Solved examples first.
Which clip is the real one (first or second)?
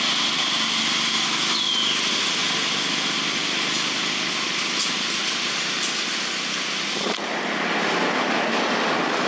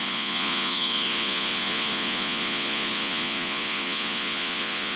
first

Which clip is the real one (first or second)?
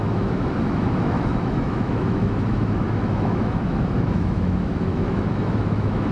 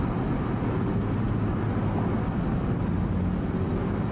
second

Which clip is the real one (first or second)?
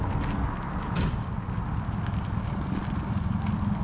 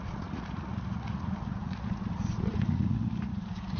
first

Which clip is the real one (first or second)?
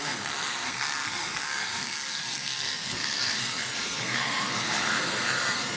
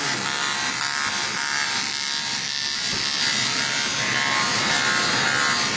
second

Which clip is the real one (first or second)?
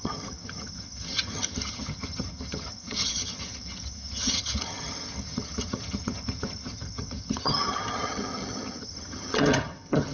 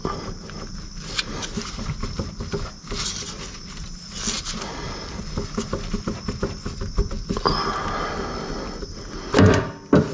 second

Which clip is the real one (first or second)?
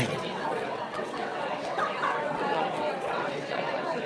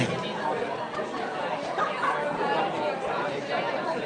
second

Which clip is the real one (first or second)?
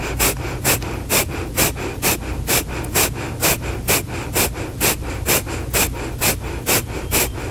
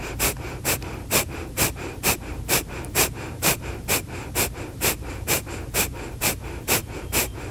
first